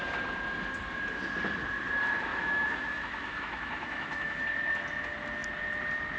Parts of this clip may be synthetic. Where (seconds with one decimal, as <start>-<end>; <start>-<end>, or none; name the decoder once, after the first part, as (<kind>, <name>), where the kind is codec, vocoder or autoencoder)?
2.3-4.4 (autoencoder, DAC-VAE)